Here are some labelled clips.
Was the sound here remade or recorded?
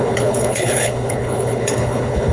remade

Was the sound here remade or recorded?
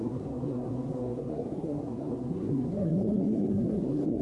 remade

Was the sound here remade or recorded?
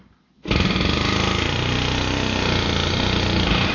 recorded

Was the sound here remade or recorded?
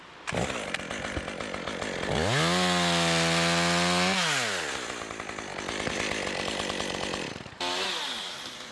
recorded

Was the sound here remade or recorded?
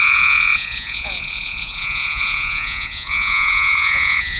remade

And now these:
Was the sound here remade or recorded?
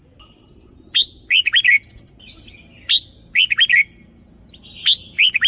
recorded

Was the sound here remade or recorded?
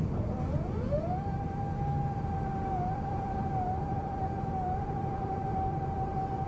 recorded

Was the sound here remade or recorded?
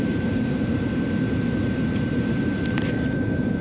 remade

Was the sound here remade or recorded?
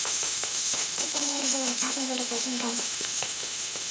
remade